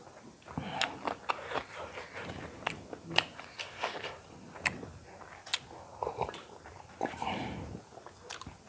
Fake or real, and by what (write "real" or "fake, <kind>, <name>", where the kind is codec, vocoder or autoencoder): real